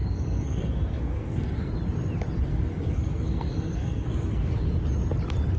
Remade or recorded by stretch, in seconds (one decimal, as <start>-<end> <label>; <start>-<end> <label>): 0.0-1.7 remade; 1.7-2.5 recorded; 2.5-4.7 remade; 4.7-5.6 recorded